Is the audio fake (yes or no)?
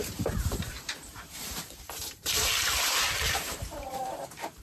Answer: yes